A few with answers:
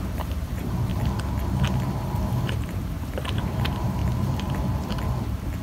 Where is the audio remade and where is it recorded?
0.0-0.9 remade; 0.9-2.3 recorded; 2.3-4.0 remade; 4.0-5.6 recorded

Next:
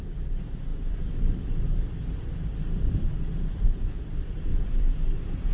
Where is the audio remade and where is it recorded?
0.0-0.7 recorded; 0.7-4.0 remade; 4.0-4.5 recorded; 4.5-5.5 remade

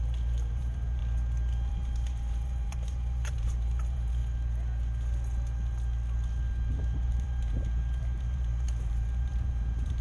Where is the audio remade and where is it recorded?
0.0-1.0 remade; 1.0-1.7 recorded; 1.7-4.2 remade; 4.2-6.8 recorded; 6.8-10.0 remade

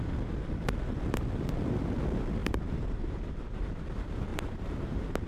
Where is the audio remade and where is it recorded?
0.0-2.4 recorded; 2.4-3.9 remade; 3.9-4.3 recorded; 4.3-5.3 remade

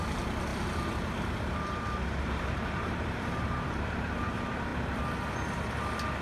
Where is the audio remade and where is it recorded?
0.0-0.5 recorded; 0.5-4.2 remade; 4.2-6.2 recorded